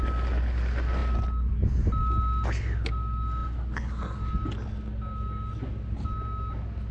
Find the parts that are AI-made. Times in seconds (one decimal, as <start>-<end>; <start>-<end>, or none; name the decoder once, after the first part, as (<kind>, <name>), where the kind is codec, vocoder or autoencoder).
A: none